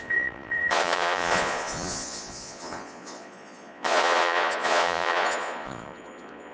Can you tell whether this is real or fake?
fake